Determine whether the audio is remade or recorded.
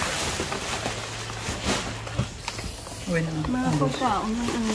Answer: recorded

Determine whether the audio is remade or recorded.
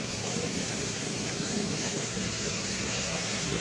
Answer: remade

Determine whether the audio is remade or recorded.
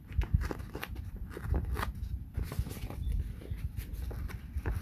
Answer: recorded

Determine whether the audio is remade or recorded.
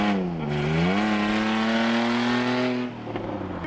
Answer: recorded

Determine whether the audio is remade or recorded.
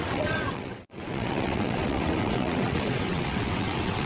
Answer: remade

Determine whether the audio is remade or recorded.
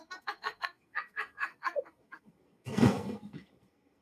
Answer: remade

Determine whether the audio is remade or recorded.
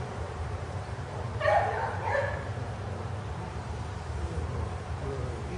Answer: remade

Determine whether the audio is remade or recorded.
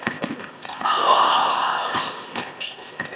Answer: remade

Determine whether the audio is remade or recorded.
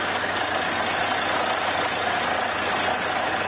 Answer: recorded